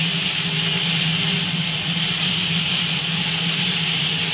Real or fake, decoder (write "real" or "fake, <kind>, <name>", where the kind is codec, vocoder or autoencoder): real